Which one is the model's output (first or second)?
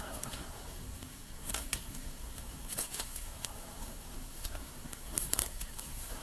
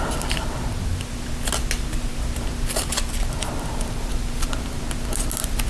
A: first